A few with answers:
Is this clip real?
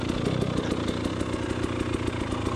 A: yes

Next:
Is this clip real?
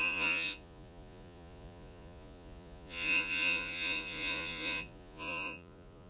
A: no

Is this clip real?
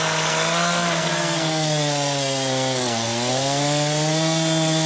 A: no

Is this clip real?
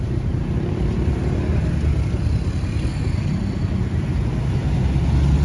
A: yes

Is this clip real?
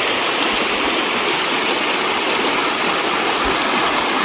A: yes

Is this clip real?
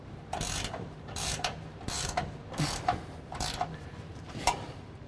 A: no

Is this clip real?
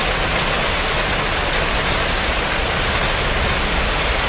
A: yes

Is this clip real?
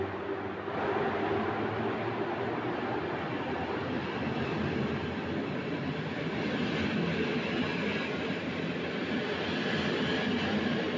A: yes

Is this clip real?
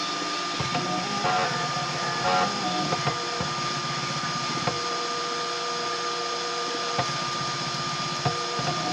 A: yes